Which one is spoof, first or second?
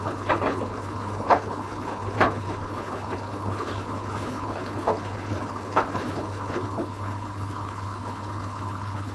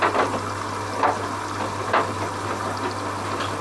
first